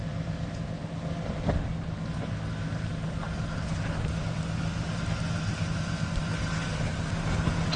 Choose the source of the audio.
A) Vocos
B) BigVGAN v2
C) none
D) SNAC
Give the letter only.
C